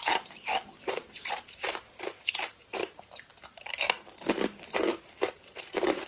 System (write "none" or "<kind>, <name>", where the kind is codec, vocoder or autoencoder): vocoder, BigVGAN v2